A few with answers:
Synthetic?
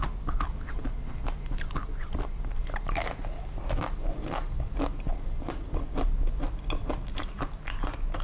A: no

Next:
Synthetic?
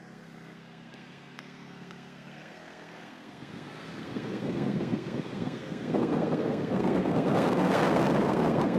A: yes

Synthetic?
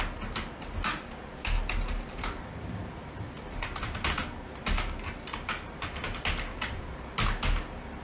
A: no